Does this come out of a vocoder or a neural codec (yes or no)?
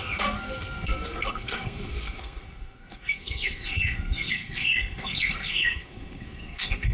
yes